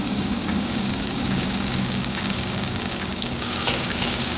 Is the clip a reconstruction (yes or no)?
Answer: yes